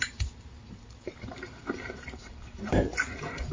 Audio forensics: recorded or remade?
remade